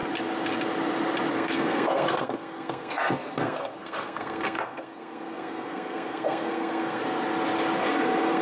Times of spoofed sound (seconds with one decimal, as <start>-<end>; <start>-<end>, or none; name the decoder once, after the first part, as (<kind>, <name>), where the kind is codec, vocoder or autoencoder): 1.3-7.0 (codec, SNAC); 7.8-8.4